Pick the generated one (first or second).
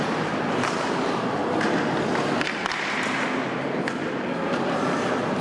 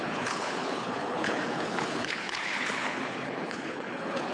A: second